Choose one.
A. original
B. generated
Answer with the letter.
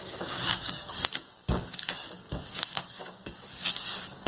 B